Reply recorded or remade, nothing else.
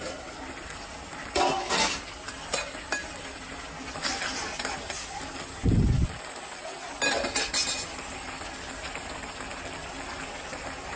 recorded